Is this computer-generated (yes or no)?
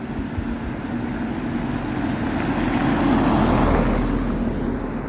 no